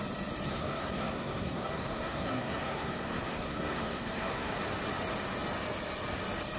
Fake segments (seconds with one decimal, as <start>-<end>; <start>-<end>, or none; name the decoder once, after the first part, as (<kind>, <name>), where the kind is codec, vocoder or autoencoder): 0.5-4.5 (codec, SNAC)